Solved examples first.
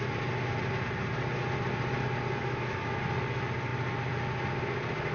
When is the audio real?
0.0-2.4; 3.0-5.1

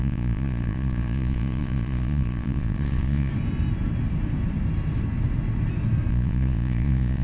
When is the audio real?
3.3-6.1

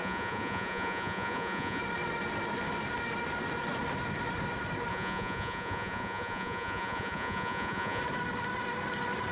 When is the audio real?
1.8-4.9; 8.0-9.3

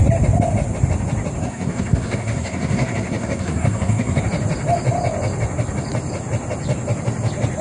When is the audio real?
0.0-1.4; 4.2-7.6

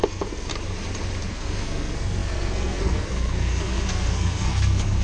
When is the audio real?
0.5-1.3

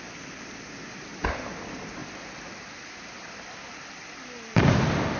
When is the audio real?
0.0-5.2

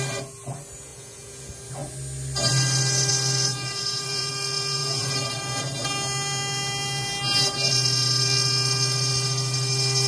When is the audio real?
0.0-0.9; 1.4-3.5; 4.3-4.8; 5.6-10.1